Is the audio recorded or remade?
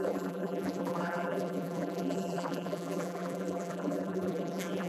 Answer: remade